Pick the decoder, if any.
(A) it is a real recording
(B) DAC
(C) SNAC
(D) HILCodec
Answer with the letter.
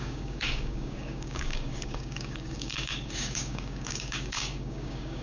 B